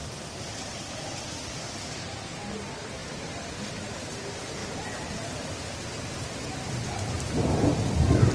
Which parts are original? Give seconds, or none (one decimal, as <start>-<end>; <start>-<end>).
1.1-4.6; 7.5-8.3